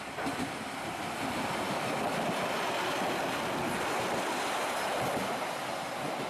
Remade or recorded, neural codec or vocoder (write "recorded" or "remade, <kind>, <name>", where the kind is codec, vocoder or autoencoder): recorded